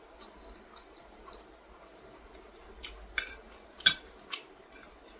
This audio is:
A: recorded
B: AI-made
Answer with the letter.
A